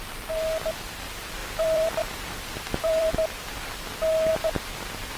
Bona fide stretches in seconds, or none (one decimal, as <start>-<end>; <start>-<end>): 0.0-1.4; 3.1-4.3